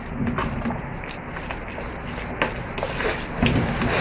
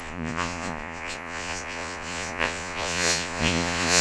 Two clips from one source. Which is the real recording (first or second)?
first